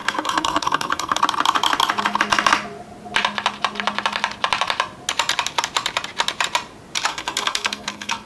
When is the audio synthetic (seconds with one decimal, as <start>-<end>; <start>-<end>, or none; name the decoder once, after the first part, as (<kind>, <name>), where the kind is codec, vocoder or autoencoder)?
0.0-1.2 (codec, SNAC); 7.1-8.3